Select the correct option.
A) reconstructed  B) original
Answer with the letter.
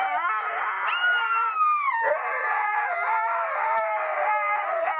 B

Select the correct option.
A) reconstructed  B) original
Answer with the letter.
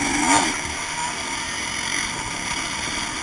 B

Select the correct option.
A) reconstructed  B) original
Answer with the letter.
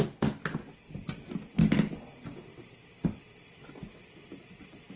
B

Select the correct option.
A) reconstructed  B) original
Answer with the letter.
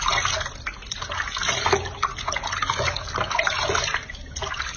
B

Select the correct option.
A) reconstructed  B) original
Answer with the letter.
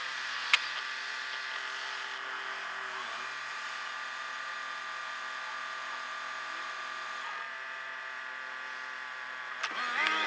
B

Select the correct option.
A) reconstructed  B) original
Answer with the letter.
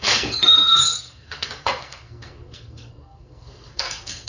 A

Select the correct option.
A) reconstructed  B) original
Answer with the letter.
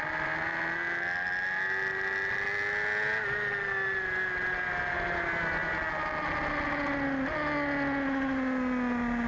B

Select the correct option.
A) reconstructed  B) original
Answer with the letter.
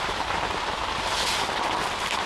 B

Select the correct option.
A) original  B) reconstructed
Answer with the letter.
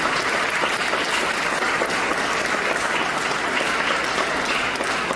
A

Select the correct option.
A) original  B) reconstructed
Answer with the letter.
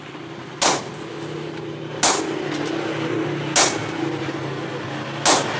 A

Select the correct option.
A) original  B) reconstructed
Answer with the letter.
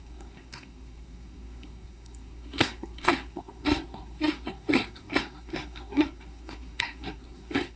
B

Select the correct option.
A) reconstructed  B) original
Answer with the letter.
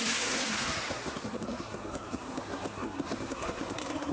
A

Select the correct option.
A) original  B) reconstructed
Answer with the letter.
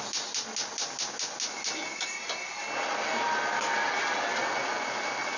A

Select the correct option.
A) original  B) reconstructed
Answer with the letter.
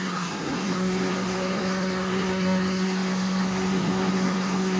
B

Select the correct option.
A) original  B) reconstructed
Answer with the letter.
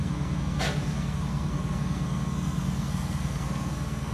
B